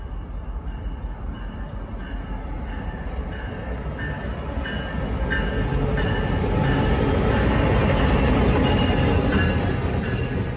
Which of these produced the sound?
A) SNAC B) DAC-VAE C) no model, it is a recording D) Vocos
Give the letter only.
C